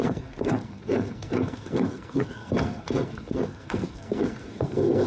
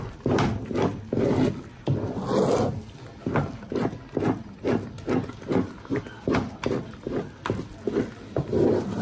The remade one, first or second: first